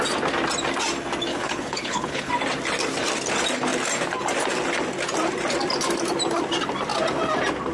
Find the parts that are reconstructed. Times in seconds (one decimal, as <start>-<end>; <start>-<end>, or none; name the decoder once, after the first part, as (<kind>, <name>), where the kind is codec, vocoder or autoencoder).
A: 1.3-2.3 (codec, HILCodec)